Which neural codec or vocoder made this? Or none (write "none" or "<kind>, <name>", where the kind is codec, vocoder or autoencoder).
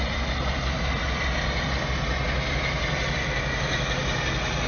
none